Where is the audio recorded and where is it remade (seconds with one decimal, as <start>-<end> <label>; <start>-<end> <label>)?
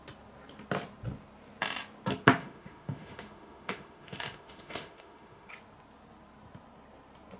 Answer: 0.0-2.4 recorded; 2.4-5.5 remade; 5.5-7.4 recorded